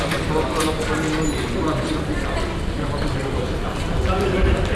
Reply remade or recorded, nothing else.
recorded